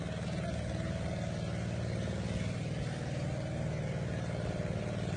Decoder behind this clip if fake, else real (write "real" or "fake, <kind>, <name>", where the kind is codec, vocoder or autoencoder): real